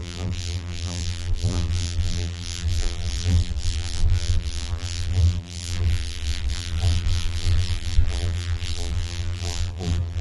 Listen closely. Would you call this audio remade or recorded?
remade